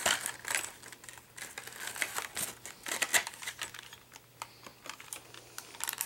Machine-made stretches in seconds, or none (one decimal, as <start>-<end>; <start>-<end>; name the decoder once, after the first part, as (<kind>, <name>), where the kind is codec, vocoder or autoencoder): none